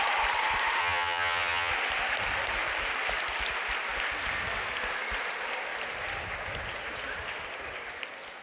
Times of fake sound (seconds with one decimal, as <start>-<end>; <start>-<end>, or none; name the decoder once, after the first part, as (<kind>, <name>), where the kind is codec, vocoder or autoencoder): 0.8-1.7 (vocoder, HiFi-GAN)